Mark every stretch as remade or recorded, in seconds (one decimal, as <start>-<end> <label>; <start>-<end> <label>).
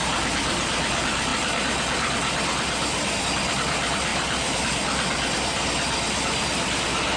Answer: 0.0-7.2 recorded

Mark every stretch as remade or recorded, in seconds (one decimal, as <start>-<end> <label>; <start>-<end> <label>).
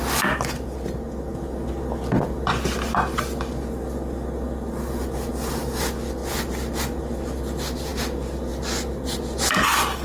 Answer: 0.0-10.0 recorded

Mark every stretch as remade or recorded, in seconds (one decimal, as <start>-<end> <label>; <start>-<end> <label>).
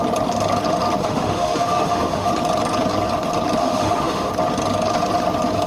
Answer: 0.0-1.0 recorded; 1.0-2.3 remade; 2.3-3.6 recorded; 3.6-4.3 remade; 4.3-5.7 recorded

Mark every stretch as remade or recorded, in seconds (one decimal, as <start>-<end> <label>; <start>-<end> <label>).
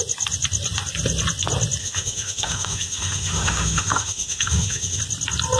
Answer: 0.0-1.8 recorded; 1.8-5.0 remade; 5.0-5.6 recorded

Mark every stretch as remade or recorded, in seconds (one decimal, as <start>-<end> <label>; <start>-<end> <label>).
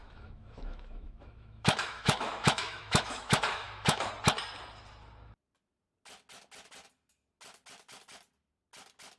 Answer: 0.0-4.1 remade; 4.1-9.2 recorded